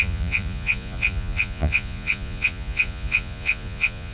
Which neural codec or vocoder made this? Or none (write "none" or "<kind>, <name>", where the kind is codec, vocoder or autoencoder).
vocoder, Vocos